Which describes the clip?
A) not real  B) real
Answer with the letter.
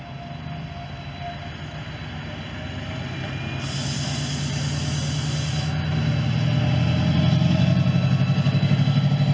B